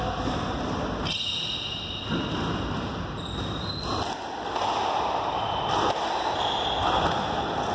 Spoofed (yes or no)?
no